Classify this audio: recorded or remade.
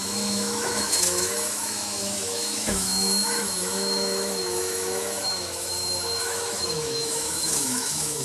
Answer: remade